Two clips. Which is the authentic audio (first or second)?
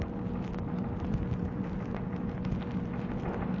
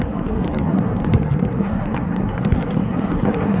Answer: first